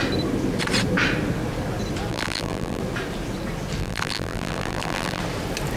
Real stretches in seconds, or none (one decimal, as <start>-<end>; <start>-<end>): 0.0-2.1; 2.8-3.8; 5.2-5.8